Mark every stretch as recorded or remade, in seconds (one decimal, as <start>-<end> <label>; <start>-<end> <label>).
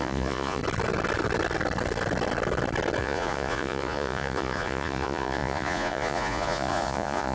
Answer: 0.0-0.6 remade; 0.6-3.0 recorded; 3.0-7.3 remade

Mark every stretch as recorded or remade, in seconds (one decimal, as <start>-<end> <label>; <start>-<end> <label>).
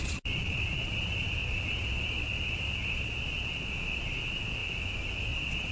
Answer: 0.0-4.6 remade; 4.6-5.2 recorded; 5.2-5.7 remade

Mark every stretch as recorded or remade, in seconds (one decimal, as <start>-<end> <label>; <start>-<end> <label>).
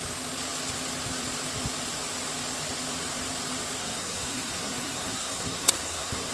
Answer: 0.0-3.8 recorded; 3.8-6.3 remade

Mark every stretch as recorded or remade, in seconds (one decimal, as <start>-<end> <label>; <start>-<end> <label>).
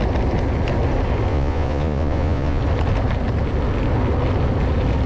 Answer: 0.0-1.3 recorded; 1.3-2.6 remade; 2.6-5.1 recorded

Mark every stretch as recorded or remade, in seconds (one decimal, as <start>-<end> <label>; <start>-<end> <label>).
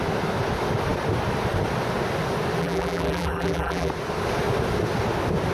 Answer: 0.0-2.6 recorded; 2.6-3.9 remade; 3.9-5.5 recorded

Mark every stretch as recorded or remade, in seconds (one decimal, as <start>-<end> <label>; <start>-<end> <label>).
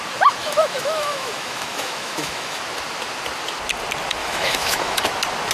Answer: 0.0-0.4 recorded; 0.4-2.6 remade; 2.6-4.2 recorded; 4.2-5.0 remade; 5.0-5.5 recorded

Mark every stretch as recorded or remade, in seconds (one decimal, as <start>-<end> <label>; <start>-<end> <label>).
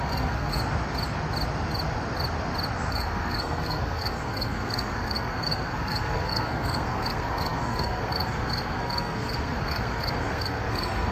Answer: 0.0-0.6 remade; 0.6-2.9 recorded; 2.9-11.1 remade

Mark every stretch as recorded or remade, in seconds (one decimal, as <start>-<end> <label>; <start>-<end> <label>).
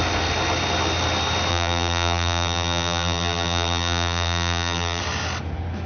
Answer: 0.0-1.5 recorded; 1.5-5.0 remade; 5.0-5.9 recorded